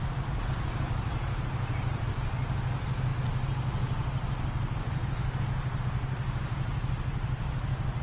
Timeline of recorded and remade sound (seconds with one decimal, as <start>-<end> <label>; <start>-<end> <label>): 0.0-8.0 recorded